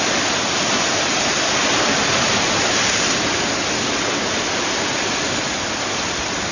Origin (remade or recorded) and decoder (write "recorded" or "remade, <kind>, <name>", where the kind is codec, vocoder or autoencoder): recorded